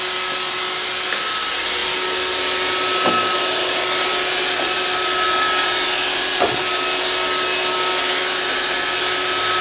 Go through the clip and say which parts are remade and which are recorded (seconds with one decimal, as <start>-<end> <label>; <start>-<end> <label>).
0.0-9.6 recorded